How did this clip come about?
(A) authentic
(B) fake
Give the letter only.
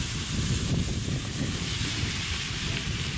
B